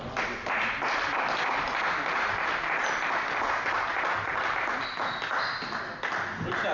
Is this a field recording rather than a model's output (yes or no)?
yes